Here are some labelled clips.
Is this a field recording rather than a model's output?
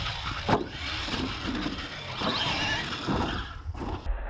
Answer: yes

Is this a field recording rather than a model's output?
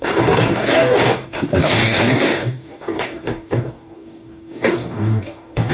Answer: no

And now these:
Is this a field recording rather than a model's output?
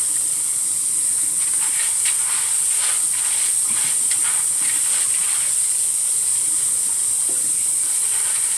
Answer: yes